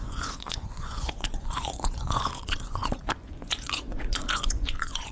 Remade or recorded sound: remade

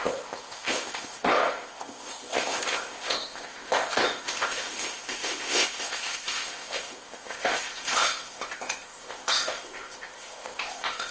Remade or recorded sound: remade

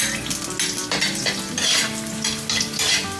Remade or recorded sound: recorded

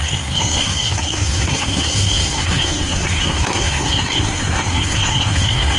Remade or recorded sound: remade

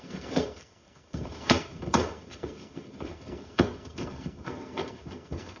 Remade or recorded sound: remade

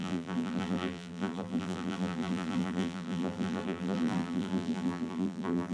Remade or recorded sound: remade